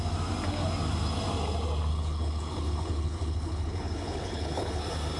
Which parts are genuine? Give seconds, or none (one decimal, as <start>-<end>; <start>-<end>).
0.0-1.9; 4.8-5.2